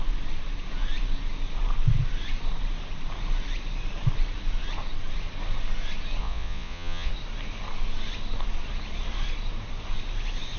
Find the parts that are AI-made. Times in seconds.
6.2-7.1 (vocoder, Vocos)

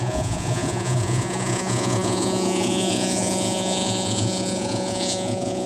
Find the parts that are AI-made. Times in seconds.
0.0-5.7 (vocoder, Vocos)

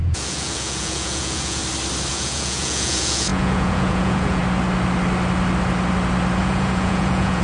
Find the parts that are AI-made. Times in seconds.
0.0-1.6 (vocoder, Vocos); 2.1-4.4; 6.4-7.4

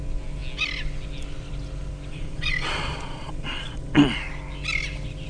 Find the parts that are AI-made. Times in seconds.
2.1-4.0 (vocoder, Vocos)

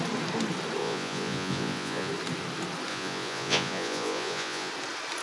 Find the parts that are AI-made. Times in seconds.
0.8-2.1 (vocoder, Vocos); 2.9-4.7